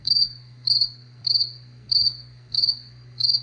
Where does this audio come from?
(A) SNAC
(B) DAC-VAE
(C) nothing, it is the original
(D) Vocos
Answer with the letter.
A